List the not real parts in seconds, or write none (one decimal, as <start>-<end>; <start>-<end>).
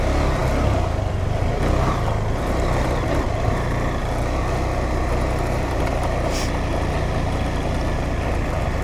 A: none